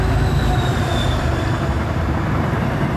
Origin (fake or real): fake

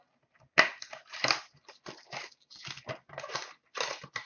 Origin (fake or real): real